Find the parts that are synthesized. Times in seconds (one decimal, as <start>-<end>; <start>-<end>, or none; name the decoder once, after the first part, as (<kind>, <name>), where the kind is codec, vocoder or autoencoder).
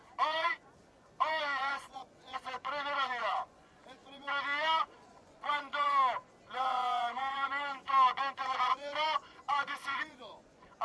0.0-6.0 (vocoder, Vocos); 6.6-10.8